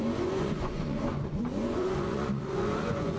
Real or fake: fake